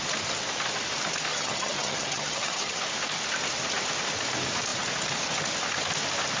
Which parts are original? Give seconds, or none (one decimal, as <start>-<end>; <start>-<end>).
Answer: 0.0-1.3; 2.8-6.4